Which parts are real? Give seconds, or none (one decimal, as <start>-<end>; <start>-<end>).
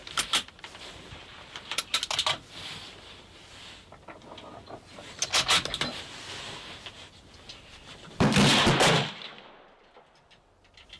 0.0-11.0